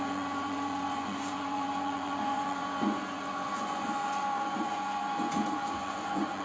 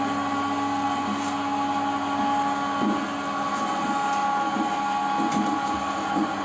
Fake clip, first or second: first